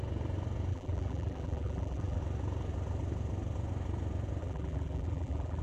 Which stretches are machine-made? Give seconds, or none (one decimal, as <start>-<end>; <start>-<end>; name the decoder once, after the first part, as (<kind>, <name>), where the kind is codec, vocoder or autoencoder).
0.7-2.2 (vocoder, BigVGAN v2); 4.4-5.6